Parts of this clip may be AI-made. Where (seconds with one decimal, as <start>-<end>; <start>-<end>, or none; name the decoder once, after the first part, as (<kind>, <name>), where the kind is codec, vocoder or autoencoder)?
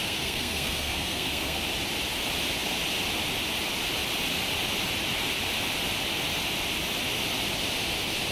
0.0-1.6 (codec, SNAC)